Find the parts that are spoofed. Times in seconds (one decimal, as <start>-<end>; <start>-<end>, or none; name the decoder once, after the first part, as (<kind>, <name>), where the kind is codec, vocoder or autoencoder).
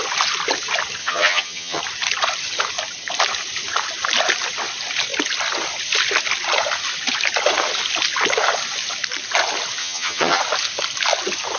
1.0-1.8 (vocoder, HiFi-GAN); 9.8-10.4